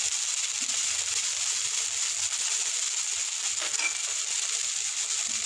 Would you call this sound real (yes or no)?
yes